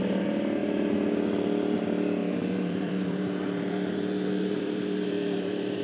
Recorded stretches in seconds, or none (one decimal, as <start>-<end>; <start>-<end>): 0.0-2.2